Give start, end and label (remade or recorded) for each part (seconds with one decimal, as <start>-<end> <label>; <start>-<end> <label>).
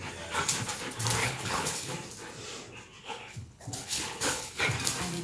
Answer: 0.0-1.2 recorded; 1.2-1.9 remade; 1.9-3.0 recorded; 3.0-4.6 remade; 4.6-5.2 recorded